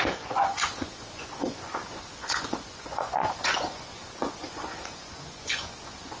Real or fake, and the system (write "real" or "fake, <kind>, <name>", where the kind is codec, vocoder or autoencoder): fake, vocoder, Vocos